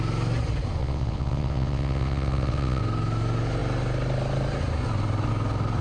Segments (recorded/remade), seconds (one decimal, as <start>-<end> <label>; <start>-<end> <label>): 0.0-0.8 recorded; 0.8-2.8 remade; 2.8-5.8 recorded